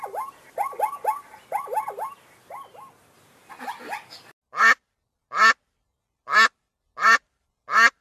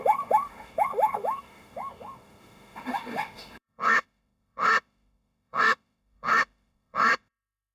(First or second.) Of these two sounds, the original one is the first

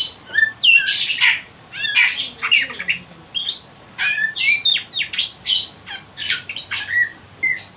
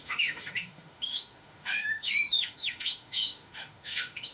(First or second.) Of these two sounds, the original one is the first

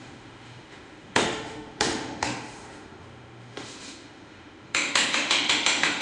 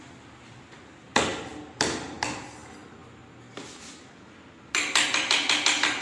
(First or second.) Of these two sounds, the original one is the second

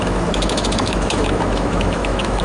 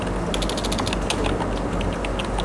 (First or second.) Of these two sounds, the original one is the second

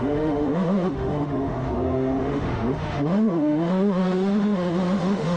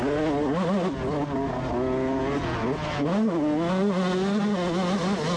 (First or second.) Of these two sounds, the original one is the second